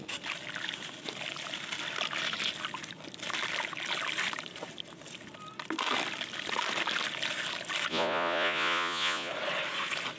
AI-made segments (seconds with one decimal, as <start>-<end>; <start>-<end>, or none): 7.9-9.3